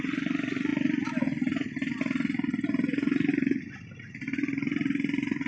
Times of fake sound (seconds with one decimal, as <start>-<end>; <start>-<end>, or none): none